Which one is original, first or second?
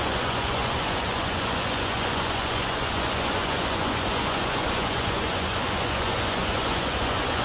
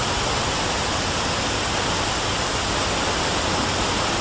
second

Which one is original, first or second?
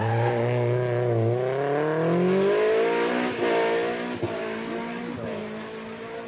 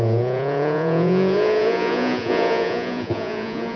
first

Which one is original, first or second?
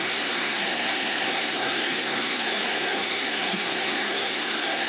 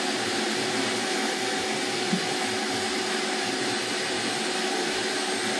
second